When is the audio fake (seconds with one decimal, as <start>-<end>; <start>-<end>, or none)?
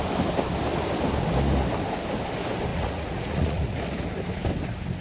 2.7-3.8